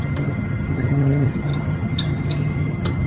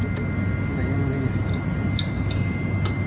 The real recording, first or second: second